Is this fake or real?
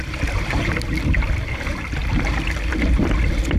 real